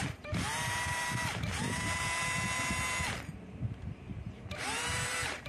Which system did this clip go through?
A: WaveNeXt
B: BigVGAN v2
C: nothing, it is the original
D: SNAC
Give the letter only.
B